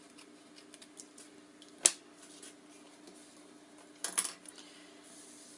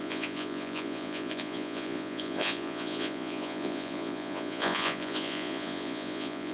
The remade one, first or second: second